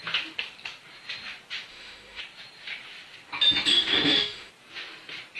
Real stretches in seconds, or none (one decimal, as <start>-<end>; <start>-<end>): 0.0-1.7; 2.2-3.7; 4.5-5.4